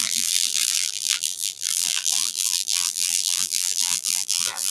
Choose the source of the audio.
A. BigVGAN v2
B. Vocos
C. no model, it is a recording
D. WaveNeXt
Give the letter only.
A